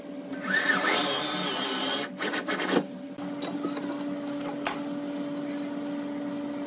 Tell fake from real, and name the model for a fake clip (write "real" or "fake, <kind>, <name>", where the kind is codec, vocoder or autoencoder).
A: real